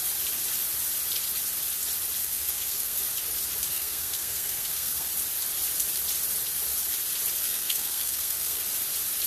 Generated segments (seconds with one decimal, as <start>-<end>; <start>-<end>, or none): 2.2-3.0; 3.7-5.1; 7.4-8.6